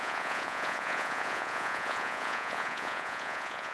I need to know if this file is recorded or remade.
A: remade